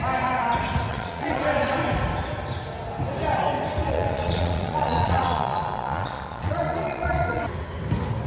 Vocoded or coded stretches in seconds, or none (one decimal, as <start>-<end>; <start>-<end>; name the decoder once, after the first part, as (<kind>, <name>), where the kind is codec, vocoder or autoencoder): 0.9-1.4 (vocoder, Vocos); 3.9-7.4